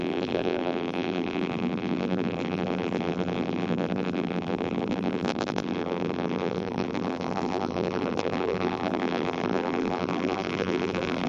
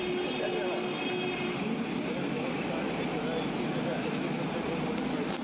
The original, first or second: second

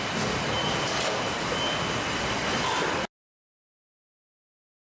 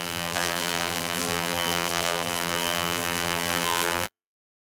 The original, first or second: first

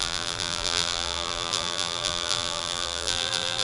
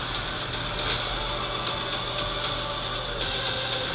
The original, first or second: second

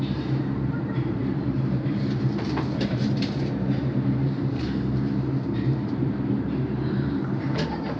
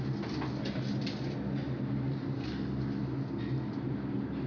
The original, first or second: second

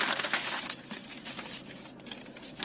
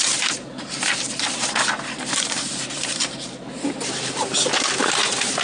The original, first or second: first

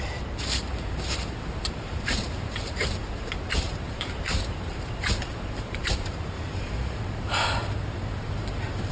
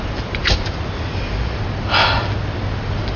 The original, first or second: second